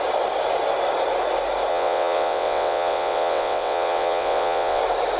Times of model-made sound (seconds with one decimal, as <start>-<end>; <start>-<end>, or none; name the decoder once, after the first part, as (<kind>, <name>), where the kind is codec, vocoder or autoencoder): 1.7-4.8 (vocoder, WaveNeXt)